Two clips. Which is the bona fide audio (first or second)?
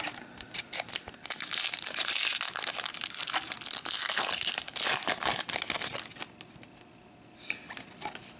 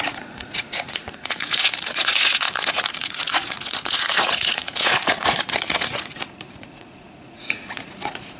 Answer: first